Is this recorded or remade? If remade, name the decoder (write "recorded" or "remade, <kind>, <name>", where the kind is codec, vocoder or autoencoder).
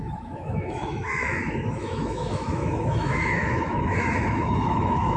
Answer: remade, autoencoder, DAC-VAE